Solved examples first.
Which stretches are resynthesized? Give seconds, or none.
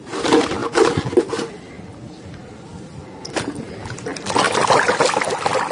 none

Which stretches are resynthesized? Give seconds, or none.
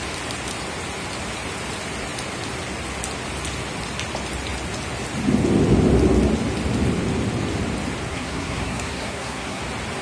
8.1-9.6 (codec, SNAC)